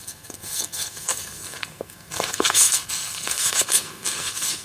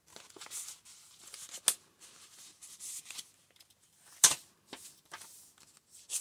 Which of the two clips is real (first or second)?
second